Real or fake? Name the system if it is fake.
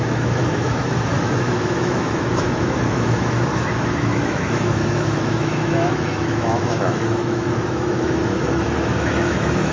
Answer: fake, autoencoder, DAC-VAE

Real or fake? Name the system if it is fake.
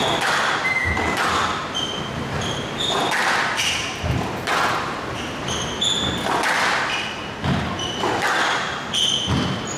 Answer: real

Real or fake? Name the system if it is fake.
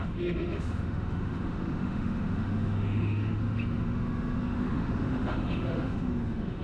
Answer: fake, autoencoder, DAC-VAE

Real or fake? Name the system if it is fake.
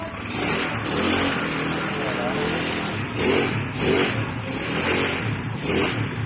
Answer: real